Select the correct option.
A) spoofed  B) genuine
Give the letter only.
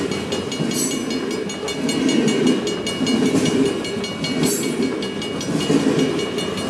B